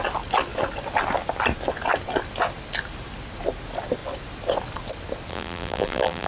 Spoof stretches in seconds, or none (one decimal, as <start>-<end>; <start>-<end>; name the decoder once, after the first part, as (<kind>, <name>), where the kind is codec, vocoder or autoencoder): 5.3-6.3 (vocoder, BigVGAN v2)